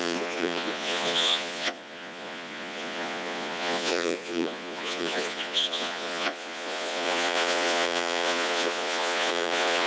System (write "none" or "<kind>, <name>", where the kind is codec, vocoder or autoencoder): vocoder, Vocos